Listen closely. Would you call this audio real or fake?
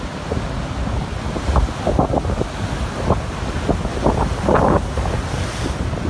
real